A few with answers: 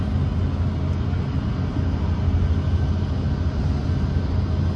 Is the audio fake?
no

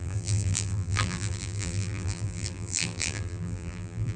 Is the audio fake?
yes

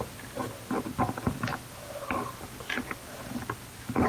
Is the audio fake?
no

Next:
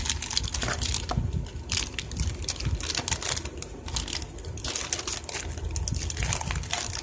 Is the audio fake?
no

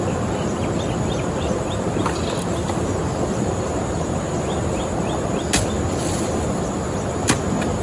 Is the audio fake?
no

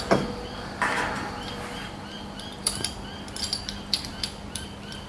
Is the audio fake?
yes